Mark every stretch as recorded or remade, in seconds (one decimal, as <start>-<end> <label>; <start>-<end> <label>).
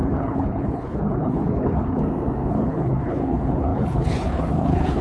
0.0-2.0 remade; 2.0-2.5 recorded; 2.5-5.0 remade